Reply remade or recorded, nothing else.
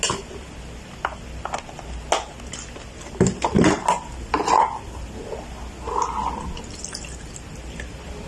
recorded